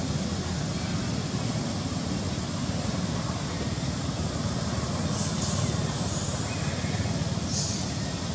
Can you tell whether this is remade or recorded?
recorded